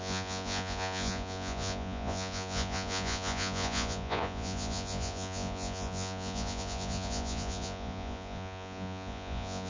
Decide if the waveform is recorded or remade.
remade